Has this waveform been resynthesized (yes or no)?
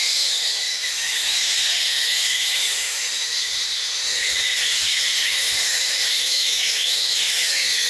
yes